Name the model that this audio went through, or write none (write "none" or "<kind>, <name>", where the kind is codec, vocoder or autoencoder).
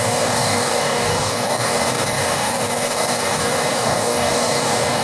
codec, DAC